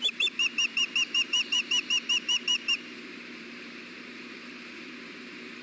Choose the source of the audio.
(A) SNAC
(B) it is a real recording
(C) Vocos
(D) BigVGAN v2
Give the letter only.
D